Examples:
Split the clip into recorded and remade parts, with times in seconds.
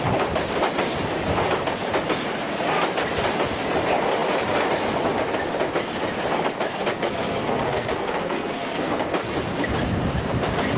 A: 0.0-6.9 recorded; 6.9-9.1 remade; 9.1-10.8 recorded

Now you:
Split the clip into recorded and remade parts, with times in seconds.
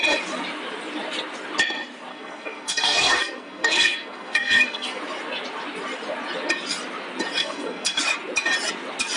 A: 0.0-2.1 recorded; 2.1-5.0 remade; 5.0-7.4 recorded; 7.4-8.0 remade; 8.0-9.2 recorded